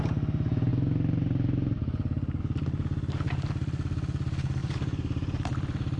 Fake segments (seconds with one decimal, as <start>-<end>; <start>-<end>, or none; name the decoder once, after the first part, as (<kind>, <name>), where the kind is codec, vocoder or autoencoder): 0.7-2.4 (vocoder, BigVGAN v2); 4.6-6.0